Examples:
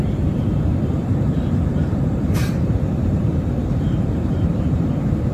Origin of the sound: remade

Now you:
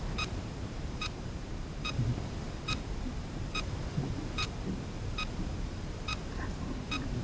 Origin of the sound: remade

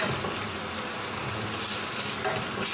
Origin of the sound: recorded